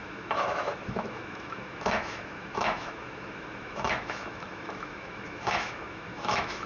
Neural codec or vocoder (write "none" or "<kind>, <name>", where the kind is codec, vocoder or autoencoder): autoencoder, DAC-VAE